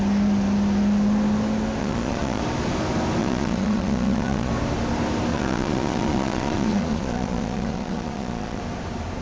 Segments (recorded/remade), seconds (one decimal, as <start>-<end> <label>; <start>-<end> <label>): 0.0-1.8 recorded; 1.8-2.4 remade; 2.4-3.2 recorded; 3.2-4.5 remade; 4.5-5.3 recorded; 5.3-8.6 remade; 8.6-9.2 recorded